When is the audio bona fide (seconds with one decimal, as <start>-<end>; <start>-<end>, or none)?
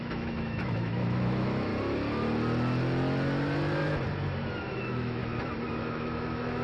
1.7-4.7; 5.2-5.8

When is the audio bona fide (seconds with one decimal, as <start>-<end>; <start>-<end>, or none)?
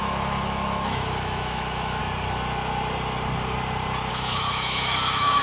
2.0-4.1